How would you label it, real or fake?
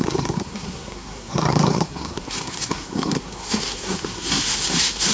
fake